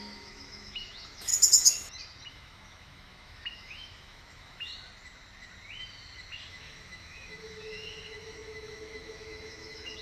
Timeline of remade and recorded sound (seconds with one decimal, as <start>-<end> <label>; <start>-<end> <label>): 0.0-1.3 remade; 1.3-2.3 recorded; 2.3-4.7 remade; 4.7-6.5 recorded; 6.5-10.0 remade